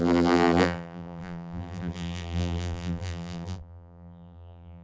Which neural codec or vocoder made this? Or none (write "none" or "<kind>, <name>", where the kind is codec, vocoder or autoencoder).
vocoder, BigVGAN v2